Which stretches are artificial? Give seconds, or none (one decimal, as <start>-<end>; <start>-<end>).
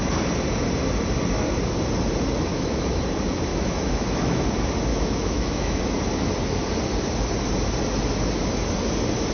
2.5-3.0; 3.5-4.4; 4.9-5.8